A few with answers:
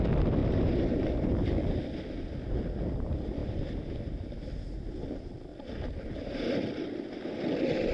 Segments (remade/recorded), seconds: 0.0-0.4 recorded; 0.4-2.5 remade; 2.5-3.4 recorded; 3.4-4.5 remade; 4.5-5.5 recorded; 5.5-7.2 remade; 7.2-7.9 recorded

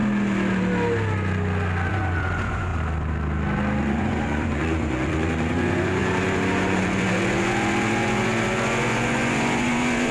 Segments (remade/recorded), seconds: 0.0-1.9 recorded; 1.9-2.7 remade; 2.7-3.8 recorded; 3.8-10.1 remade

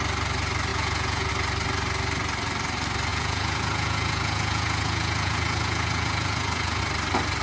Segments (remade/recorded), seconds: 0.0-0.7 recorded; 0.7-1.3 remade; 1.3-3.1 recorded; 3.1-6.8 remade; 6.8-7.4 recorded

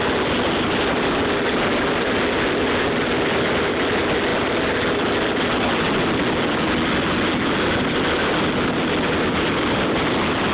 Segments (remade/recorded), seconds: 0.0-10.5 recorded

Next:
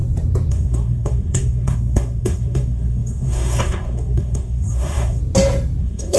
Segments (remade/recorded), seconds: 0.0-0.5 recorded; 0.5-5.2 remade; 5.2-5.8 recorded; 5.8-6.2 remade

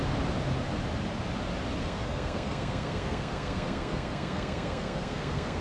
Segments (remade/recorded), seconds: 0.0-1.8 recorded; 1.8-5.6 remade